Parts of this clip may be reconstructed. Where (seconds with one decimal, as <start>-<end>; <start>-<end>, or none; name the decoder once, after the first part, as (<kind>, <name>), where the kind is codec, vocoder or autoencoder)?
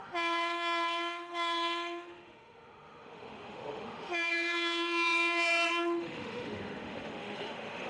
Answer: 0.0-7.9 (autoencoder, DAC-VAE)